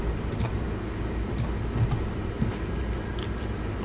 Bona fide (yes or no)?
yes